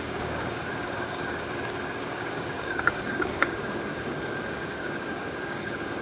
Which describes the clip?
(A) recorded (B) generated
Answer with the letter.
B